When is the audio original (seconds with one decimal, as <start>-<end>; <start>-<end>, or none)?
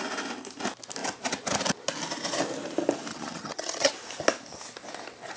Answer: 0.0-3.1; 3.9-5.4